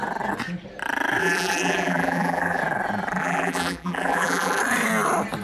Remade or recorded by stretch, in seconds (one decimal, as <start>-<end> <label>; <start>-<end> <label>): 0.0-1.2 recorded; 1.2-2.6 remade; 2.6-3.2 recorded; 3.2-4.6 remade; 4.6-5.4 recorded